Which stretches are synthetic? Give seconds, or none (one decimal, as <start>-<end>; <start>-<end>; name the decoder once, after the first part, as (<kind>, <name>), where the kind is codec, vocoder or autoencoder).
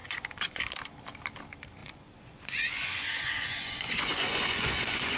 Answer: 0.0-0.6 (vocoder, Vocos); 1.8-5.2